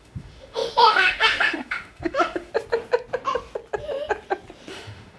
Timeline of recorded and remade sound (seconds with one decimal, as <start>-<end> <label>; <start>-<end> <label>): 0.0-2.5 remade; 2.5-4.7 recorded; 4.7-5.2 remade